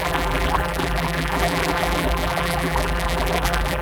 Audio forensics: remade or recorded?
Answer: remade